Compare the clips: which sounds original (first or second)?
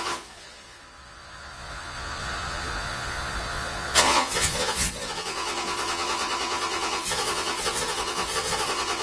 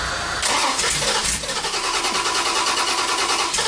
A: second